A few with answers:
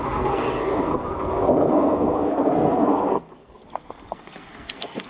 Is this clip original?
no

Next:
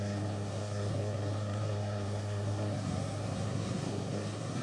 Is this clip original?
no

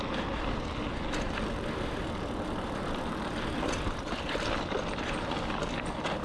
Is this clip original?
yes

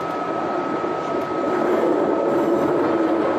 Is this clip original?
yes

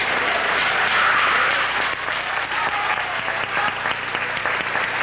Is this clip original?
yes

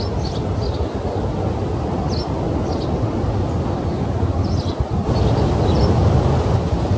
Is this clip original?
yes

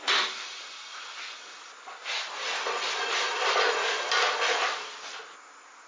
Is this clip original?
yes